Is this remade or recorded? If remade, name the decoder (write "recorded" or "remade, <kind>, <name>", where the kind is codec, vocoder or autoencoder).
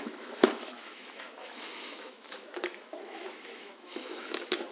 remade, autoencoder, DAC-VAE